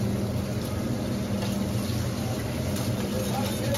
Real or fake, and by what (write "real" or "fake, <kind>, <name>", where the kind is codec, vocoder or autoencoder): real